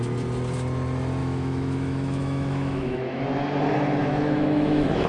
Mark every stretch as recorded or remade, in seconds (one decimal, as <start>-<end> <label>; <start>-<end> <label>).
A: 0.0-1.2 recorded; 1.2-3.2 remade; 3.2-4.0 recorded; 4.0-5.1 remade